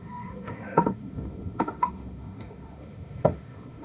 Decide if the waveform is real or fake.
fake